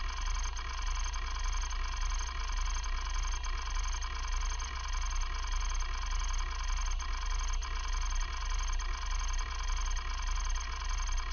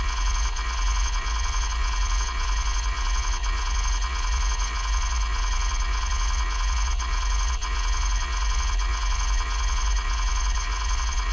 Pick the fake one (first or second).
second